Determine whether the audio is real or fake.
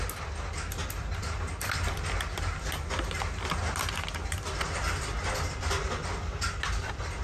real